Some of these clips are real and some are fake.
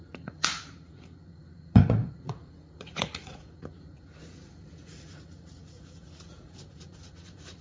fake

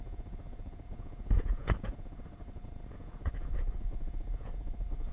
fake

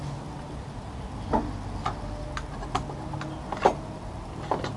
real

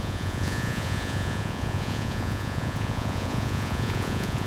fake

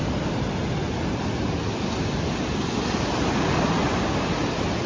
real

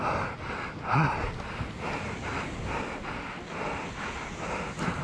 real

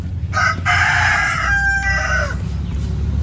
real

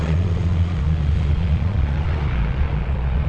fake